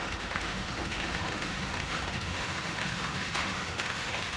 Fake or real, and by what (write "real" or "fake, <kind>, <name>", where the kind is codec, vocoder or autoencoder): fake, autoencoder, DAC-VAE